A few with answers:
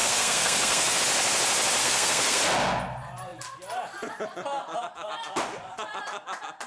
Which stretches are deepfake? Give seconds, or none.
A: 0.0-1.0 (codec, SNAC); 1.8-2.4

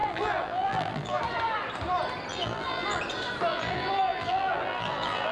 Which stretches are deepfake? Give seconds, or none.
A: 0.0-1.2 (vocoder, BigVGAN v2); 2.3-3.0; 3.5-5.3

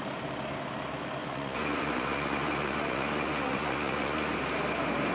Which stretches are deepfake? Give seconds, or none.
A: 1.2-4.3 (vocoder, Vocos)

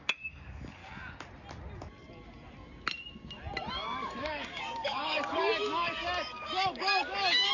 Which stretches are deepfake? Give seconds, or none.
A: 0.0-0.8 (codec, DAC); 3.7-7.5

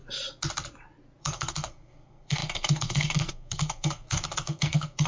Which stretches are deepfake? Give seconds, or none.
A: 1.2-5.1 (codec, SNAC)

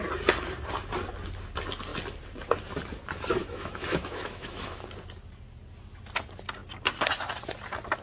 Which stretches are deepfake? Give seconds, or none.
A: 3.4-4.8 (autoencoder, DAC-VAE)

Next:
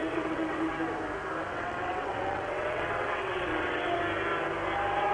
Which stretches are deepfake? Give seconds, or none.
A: 0.0-0.7 (vocoder, WaveNeXt); 1.5-4.0